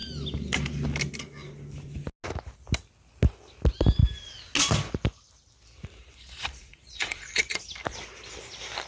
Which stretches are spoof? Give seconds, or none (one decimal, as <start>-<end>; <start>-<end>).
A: 6.0-7.6